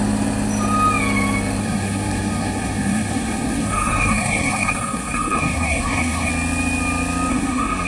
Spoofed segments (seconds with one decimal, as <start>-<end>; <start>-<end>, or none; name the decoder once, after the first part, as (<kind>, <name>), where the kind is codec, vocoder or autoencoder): 1.6-6.3 (codec, SNAC); 7.3-7.9